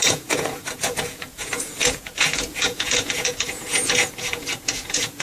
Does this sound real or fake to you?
fake